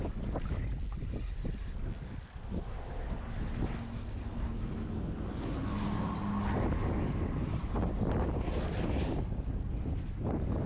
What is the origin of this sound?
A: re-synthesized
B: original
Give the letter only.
B